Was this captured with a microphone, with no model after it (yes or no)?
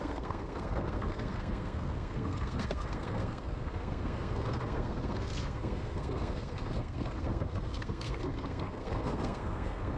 no